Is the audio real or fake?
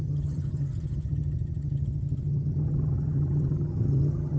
fake